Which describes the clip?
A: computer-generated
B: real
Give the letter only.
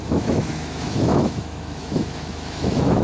A